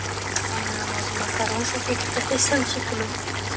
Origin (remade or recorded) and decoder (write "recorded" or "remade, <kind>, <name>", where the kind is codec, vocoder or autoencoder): recorded